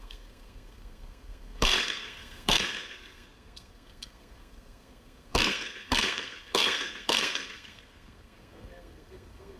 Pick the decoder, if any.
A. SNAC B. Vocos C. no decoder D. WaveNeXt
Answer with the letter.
A